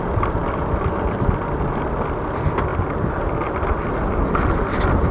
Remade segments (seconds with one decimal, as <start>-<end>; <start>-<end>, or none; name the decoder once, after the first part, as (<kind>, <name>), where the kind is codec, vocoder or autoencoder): none

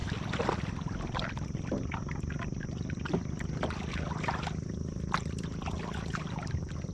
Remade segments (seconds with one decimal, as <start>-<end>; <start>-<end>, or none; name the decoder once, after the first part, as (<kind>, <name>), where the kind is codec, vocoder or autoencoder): none

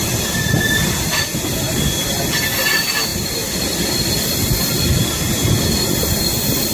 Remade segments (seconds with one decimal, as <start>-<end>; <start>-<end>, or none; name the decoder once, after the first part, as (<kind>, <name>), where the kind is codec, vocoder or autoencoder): 3.1-4.4 (vocoder, BigVGAN v2)

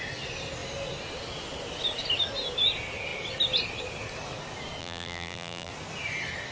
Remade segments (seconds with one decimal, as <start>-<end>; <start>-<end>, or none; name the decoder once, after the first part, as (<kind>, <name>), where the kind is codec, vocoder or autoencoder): 4.8-5.7 (vocoder, BigVGAN v2)

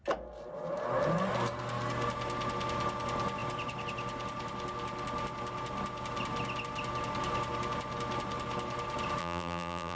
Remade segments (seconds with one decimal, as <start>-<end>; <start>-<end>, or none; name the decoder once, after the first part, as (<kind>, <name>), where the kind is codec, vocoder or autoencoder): 9.2-10.0 (vocoder, BigVGAN v2)

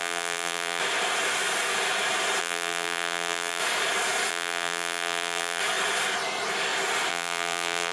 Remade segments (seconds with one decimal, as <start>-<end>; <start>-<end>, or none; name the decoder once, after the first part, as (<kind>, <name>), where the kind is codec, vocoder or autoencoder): 0.0-0.8 (vocoder, BigVGAN v2); 2.4-3.6; 4.3-5.6; 7.1-7.9